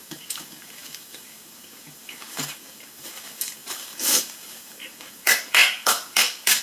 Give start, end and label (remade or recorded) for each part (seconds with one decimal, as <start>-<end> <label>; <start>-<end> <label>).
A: 0.0-6.6 remade